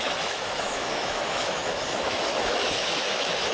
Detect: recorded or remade remade